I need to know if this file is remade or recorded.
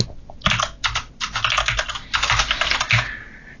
recorded